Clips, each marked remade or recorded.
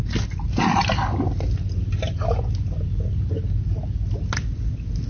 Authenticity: recorded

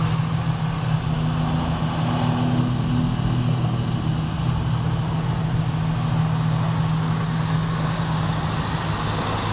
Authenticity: recorded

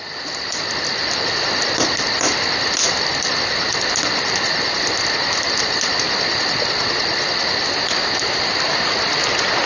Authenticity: recorded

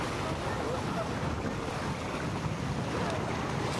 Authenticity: recorded